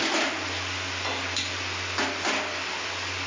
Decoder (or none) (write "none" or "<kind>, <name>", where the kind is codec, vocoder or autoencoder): none